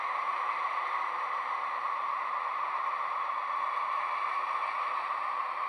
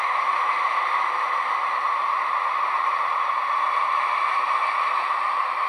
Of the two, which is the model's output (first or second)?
first